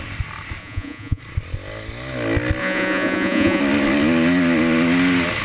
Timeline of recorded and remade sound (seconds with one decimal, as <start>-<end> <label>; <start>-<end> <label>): 0.0-0.6 recorded; 0.6-1.2 remade; 1.2-2.6 recorded; 2.6-3.6 remade; 3.6-5.4 recorded